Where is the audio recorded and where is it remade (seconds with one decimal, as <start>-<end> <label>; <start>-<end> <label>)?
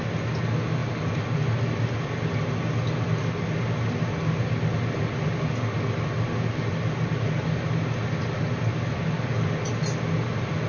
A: 0.0-10.7 recorded